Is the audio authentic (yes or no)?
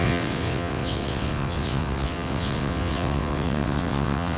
no